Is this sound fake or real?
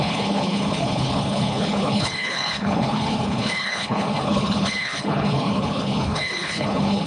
fake